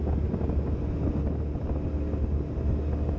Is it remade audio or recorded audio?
recorded